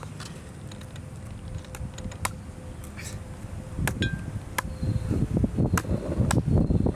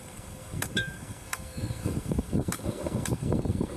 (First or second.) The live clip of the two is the first